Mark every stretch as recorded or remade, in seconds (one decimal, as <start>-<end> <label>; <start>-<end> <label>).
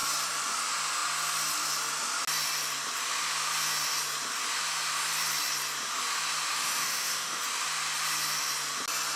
0.0-6.6 recorded; 6.6-7.4 remade; 7.4-9.2 recorded